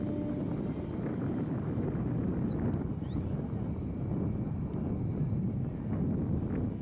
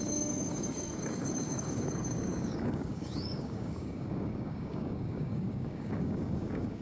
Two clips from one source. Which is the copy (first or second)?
second